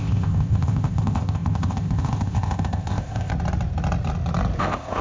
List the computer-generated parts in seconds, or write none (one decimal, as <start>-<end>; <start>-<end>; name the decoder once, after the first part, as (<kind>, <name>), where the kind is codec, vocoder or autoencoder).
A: 0.0-3.3 (codec, ZipCodec); 4.6-5.0